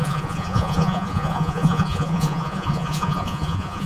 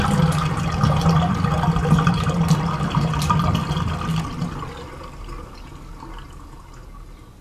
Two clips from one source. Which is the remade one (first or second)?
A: first